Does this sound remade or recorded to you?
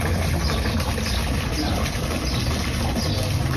recorded